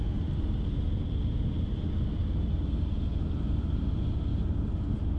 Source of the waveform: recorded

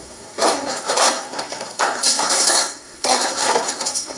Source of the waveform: remade